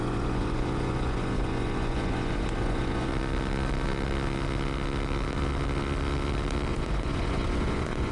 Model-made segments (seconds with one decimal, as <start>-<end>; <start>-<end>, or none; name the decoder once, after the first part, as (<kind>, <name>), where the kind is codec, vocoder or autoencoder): 0.0-3.1 (vocoder, Vocos); 6.7-8.1